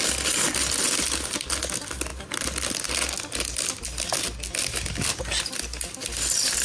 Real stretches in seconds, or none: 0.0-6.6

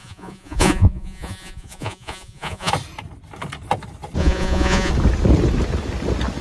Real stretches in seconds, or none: 2.7-4.2; 4.9-6.4

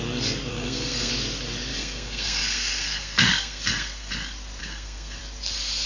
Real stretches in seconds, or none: 0.0-0.5; 1.1-1.7; 4.1-4.6; 5.2-5.9

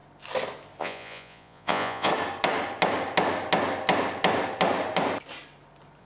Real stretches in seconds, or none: 0.0-0.8; 2.1-6.0

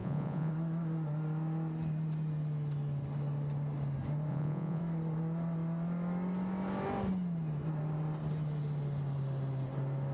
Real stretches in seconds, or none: 0.5-4.3; 4.8-10.1

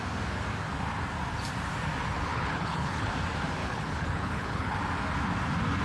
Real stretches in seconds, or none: 0.0-2.3; 3.1-3.6; 4.8-5.8

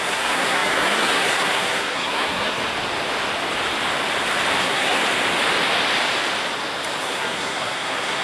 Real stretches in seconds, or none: 2.6-4.6; 5.0-7.0